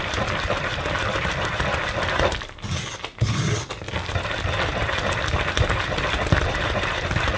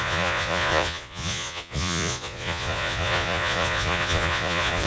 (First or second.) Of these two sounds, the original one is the first